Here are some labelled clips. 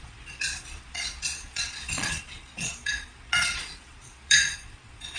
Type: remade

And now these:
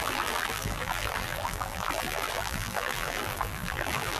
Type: remade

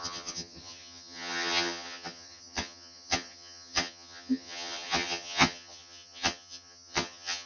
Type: remade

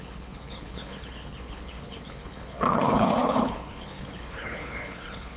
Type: remade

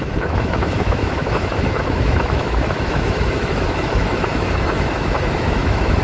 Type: remade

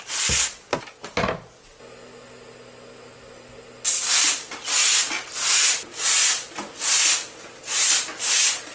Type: recorded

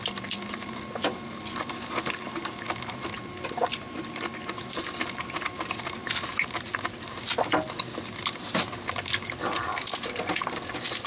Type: recorded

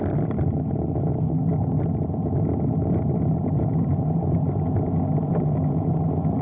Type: recorded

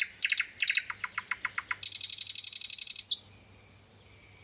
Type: recorded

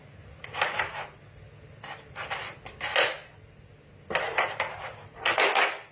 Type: recorded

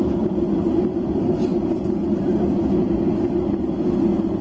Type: recorded